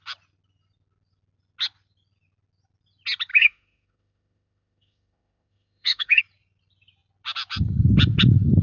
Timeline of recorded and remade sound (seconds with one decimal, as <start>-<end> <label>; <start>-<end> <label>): 0.0-3.3 recorded; 3.3-6.2 remade; 6.2-8.6 recorded